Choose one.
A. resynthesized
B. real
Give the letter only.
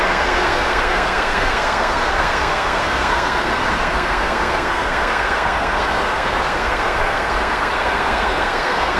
A